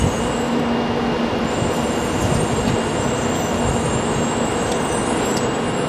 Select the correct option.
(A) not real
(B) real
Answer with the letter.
B